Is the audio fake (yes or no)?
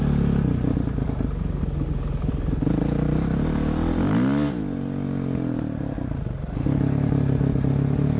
no